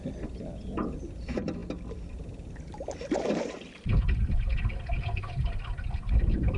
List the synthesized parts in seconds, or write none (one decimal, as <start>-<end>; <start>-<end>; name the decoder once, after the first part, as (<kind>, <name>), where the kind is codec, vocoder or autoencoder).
0.0-6.6 (vocoder, BigVGAN v2)